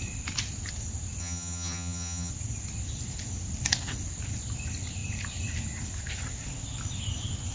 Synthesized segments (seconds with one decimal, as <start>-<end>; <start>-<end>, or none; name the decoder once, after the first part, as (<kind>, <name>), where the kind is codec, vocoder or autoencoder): 1.2-2.3 (vocoder, HiFi-GAN)